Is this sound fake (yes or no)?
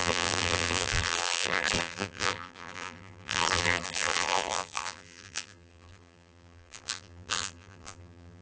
yes